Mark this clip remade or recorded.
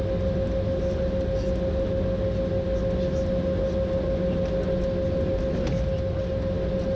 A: recorded